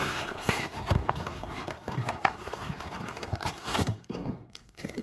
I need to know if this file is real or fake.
fake